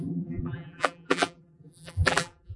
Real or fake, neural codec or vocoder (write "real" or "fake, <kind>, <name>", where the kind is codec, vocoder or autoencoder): fake, vocoder, BigVGAN v2